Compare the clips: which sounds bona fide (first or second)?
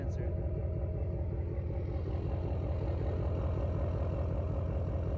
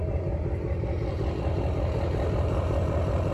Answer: first